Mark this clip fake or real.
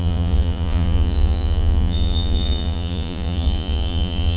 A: fake